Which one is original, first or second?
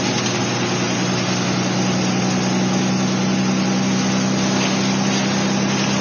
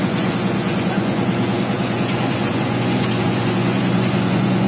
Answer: first